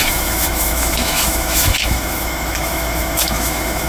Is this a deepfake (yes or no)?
yes